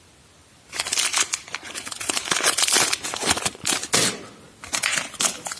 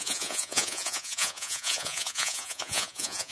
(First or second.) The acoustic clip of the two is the first